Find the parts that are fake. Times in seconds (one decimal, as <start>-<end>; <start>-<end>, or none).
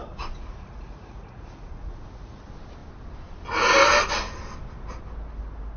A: 0.0-2.4